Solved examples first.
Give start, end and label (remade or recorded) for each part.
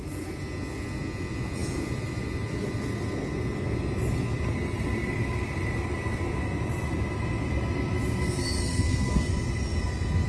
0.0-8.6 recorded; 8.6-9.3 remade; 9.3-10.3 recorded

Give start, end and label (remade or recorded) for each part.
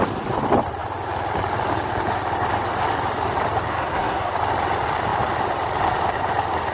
0.0-3.7 recorded; 3.7-4.3 remade; 4.3-6.7 recorded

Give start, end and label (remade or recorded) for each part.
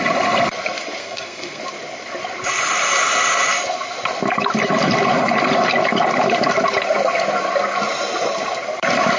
0.0-1.0 recorded; 1.0-1.6 remade; 1.6-9.2 recorded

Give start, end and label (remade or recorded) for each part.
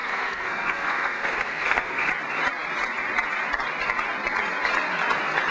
0.0-2.1 remade; 2.1-5.5 recorded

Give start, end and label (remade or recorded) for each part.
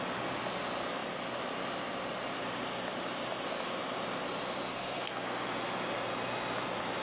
0.0-4.7 recorded; 4.7-5.4 remade; 5.4-7.0 recorded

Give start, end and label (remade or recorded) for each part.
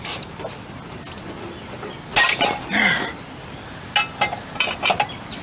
0.0-5.4 recorded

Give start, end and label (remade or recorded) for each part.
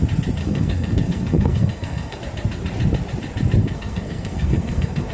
0.0-0.4 recorded; 0.4-2.2 remade; 2.2-3.6 recorded; 3.6-5.1 remade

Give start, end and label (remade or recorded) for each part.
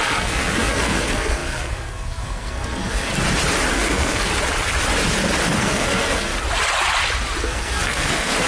0.0-3.1 remade; 3.1-3.7 recorded; 3.7-4.3 remade; 4.3-5.6 recorded; 5.6-6.3 remade; 6.3-7.4 recorded; 7.4-8.5 remade